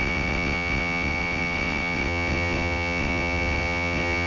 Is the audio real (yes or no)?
no